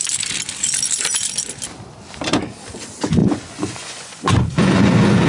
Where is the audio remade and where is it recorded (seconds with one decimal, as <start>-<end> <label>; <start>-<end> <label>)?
0.0-3.2 recorded; 3.2-5.3 remade